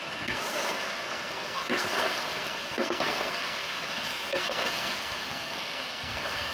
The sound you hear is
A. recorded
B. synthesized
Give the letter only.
B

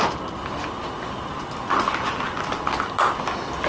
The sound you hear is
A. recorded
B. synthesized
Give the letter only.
A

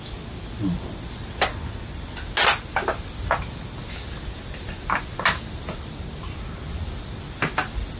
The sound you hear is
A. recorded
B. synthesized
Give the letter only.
A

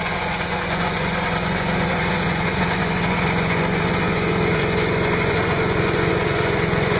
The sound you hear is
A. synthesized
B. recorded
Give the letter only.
A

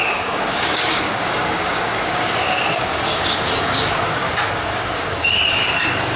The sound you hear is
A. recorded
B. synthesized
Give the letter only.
B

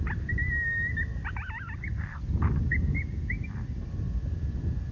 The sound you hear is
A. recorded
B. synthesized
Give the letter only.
A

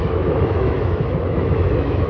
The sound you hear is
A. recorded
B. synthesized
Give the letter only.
B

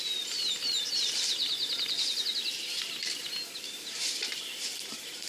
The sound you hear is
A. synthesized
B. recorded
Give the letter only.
A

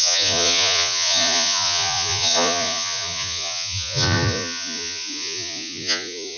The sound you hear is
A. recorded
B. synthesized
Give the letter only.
B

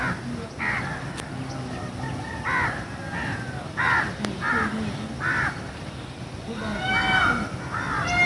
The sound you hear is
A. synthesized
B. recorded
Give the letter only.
B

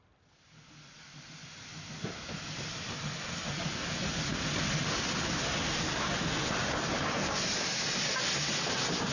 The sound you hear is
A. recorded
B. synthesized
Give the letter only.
A